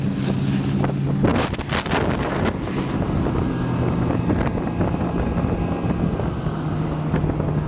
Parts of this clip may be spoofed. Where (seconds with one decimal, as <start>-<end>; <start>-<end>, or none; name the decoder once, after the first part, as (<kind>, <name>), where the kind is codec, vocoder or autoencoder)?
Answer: none